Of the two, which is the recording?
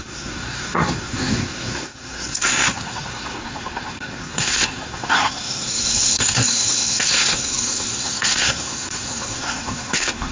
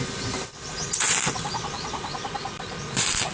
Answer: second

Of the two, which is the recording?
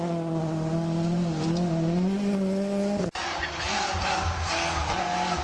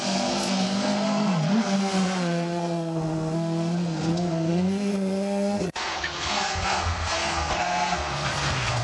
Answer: first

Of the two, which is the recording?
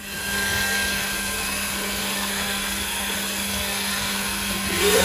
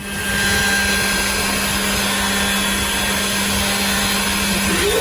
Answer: second